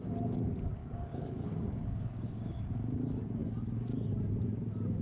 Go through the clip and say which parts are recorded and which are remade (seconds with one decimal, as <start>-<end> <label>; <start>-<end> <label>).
0.0-0.8 recorded; 0.8-2.6 remade; 2.6-5.0 recorded